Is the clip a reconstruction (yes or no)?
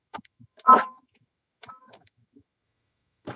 yes